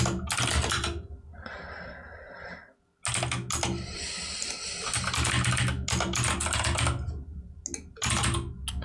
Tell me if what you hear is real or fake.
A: real